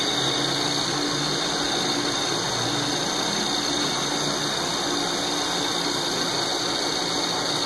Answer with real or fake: real